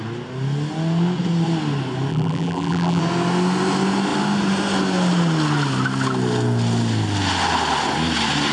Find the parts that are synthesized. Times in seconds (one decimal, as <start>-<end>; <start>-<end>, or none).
2.1-3.0

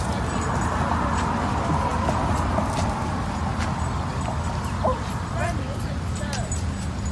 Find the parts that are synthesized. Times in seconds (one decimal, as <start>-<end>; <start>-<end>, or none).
none

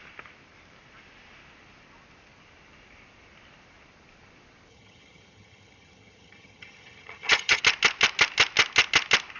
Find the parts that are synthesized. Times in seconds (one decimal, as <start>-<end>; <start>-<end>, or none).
4.7-7.6

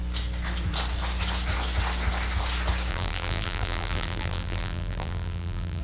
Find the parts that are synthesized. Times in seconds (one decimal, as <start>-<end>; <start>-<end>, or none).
2.9-5.8